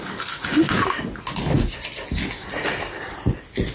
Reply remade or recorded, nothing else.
recorded